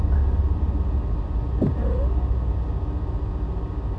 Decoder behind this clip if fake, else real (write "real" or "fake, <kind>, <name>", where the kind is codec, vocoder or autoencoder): real